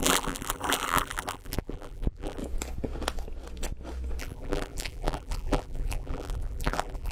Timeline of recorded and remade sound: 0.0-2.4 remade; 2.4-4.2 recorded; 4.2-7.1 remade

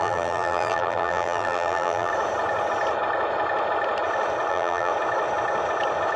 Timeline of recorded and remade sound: 0.0-2.1 remade; 2.1-4.5 recorded; 4.5-4.9 remade; 4.9-6.2 recorded

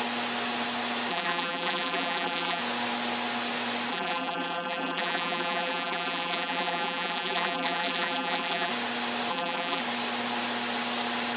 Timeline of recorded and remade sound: 0.0-1.1 recorded; 1.1-2.6 remade; 2.6-3.9 recorded; 3.9-8.7 remade; 8.7-9.3 recorded; 9.3-9.8 remade; 9.8-11.4 recorded